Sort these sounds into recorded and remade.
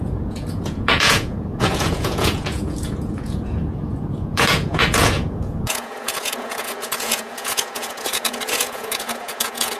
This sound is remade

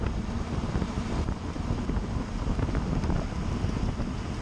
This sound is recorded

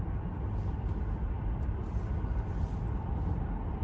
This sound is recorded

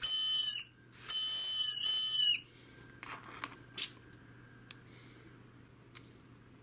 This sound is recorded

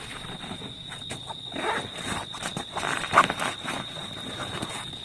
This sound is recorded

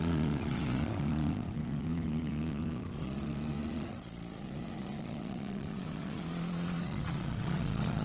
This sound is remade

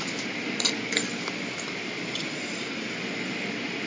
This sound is recorded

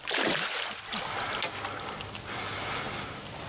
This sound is recorded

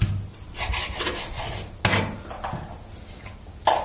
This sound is recorded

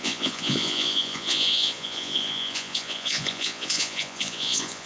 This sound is remade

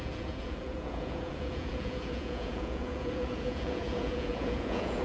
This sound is remade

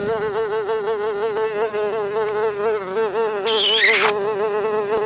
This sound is recorded